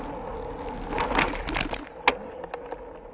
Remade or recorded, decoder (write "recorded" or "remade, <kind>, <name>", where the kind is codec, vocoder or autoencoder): recorded